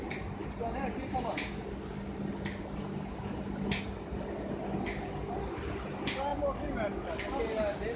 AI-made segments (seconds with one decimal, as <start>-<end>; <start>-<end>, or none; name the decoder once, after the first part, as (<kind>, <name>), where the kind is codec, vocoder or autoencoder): none